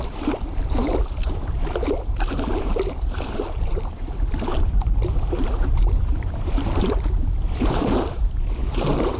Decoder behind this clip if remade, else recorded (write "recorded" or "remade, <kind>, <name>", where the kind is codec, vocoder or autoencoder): remade, vocoder, BigVGAN v2